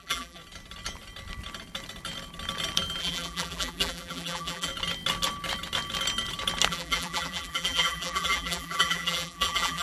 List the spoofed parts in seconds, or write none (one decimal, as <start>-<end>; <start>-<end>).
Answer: 0.0-0.4; 3.0-4.7; 6.7-9.8